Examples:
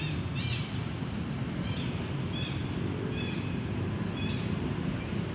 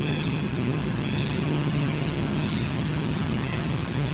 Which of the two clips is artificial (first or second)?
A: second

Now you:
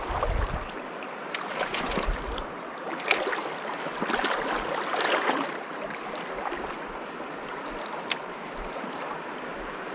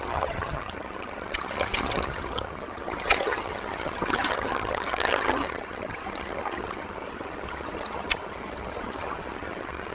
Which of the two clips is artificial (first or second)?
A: second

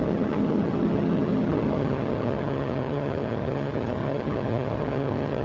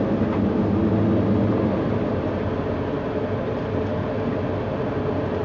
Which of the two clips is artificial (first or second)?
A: first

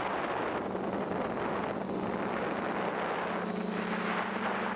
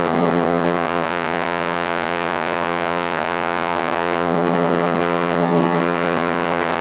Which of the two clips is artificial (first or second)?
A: second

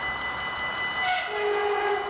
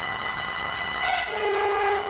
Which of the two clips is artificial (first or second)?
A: second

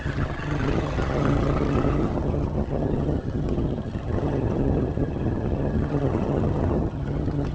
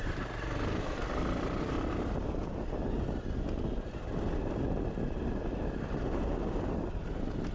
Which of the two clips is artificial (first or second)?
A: first